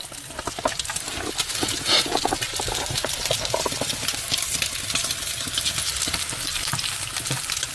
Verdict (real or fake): real